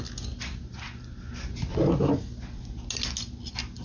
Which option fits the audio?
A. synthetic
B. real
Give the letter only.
B